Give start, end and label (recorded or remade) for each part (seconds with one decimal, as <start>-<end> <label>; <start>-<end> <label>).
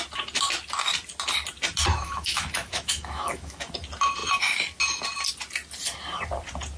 0.0-1.9 recorded; 1.9-3.7 remade; 3.7-6.8 recorded